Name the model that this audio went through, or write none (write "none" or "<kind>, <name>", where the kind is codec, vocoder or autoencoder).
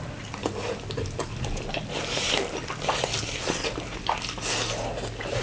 vocoder, BigVGAN v2